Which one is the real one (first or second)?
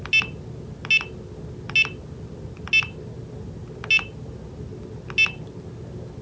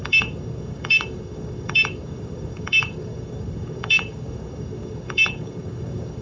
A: first